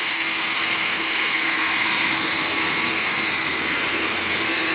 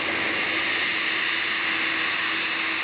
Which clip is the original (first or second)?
second